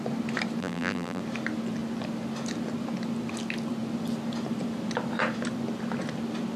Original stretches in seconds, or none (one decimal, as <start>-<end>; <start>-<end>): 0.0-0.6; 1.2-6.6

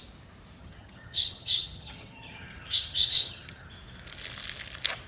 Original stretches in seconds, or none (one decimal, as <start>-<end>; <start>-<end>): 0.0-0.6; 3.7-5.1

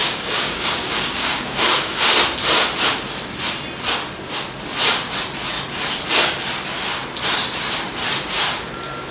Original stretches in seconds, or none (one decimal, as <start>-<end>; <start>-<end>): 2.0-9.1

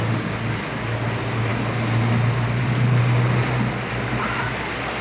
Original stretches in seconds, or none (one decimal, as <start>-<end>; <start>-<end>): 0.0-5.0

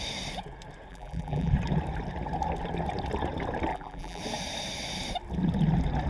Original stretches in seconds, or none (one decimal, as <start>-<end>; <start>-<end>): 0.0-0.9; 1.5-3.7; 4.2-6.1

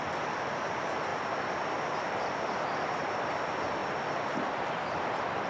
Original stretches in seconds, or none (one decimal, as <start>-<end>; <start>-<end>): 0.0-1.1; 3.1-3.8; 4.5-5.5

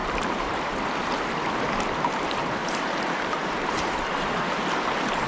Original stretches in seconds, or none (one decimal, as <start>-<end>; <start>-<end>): 0.7-2.6; 4.4-5.3